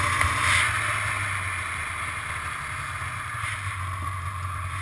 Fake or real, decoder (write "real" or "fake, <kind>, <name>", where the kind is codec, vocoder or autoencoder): real